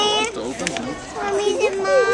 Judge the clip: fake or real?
real